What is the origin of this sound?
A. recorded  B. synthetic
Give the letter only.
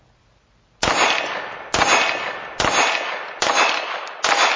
A